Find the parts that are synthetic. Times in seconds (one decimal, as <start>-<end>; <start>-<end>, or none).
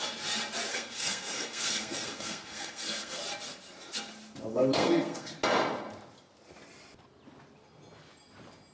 0.7-3.2; 4.5-5.3